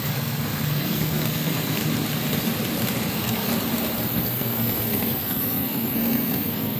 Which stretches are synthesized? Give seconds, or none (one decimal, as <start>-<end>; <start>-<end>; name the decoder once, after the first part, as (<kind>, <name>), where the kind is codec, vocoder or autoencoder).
0.0-1.8 (codec, SNAC); 3.1-3.5; 4.1-6.8